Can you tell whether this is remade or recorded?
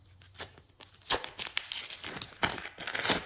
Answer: recorded